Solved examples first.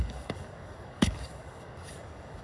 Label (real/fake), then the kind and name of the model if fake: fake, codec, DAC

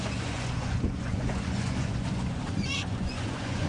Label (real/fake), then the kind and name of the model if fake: fake, vocoder, Vocos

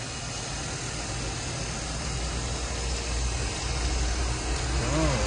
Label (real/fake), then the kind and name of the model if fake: real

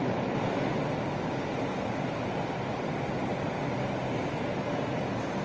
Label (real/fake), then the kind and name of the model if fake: real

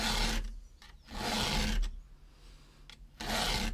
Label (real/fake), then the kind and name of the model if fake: real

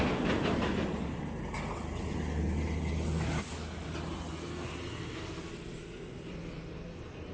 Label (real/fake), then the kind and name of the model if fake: real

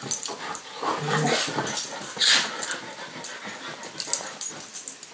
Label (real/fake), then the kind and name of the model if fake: real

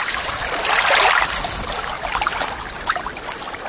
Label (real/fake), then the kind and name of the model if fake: real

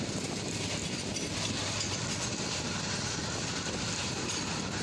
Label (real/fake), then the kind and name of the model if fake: real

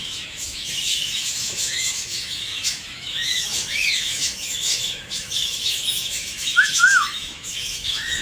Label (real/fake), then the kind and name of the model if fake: fake, autoencoder, DAC-VAE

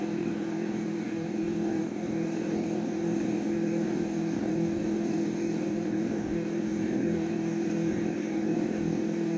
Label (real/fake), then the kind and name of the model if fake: fake, codec, DAC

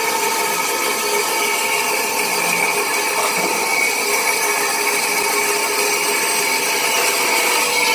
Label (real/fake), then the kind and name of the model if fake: real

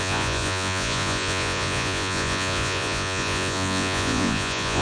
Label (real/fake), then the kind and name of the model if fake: fake, vocoder, Vocos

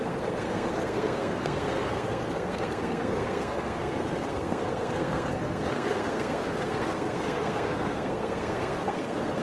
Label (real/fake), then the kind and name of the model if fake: fake, codec, SNAC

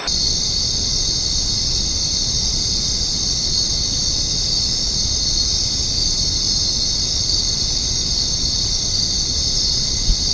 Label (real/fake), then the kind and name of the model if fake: fake, vocoder, BigVGAN v2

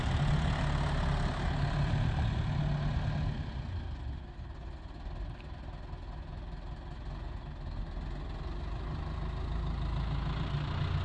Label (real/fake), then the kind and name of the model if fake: real